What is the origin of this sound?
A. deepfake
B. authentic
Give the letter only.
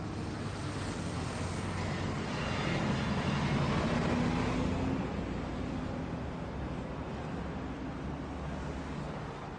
B